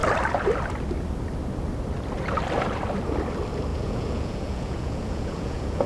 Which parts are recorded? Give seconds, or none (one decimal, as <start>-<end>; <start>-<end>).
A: 0.0-3.7